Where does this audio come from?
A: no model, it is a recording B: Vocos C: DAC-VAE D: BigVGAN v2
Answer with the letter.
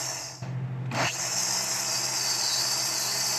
A